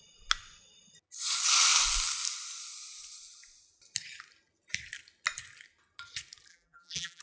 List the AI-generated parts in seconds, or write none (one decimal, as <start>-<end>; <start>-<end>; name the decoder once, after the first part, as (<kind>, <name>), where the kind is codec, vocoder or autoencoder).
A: 6.5-7.2 (vocoder, BigVGAN v2)